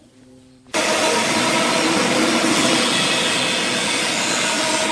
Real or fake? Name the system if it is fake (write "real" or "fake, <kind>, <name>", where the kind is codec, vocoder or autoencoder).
real